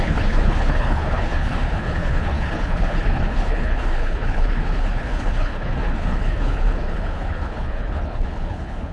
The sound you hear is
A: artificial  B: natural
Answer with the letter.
A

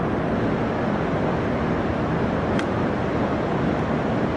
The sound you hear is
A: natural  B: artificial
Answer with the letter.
A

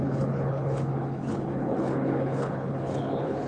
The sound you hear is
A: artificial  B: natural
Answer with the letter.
A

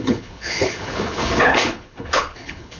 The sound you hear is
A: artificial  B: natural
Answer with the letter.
A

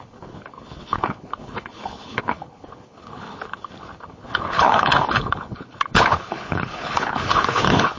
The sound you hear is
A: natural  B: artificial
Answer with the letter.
B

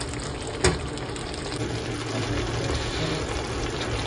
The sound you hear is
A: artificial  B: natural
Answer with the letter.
B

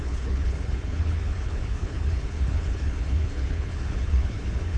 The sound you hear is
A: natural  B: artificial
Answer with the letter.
B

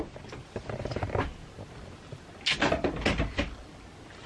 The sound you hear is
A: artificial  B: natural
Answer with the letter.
B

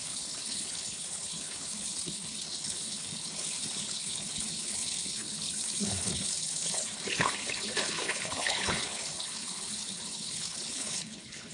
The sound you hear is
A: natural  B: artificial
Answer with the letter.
B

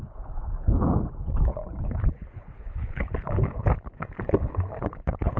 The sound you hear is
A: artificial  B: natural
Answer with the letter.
A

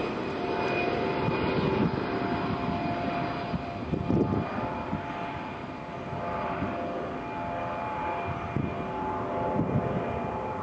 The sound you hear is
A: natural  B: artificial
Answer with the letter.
A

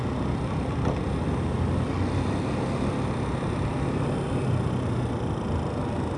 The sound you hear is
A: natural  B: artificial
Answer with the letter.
A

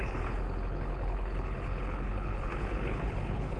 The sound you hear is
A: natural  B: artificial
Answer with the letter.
B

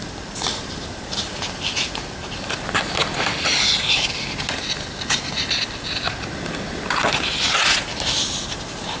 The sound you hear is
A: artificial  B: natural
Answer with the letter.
B